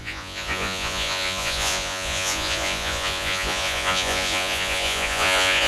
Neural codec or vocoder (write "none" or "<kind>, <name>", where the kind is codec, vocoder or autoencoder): vocoder, Vocos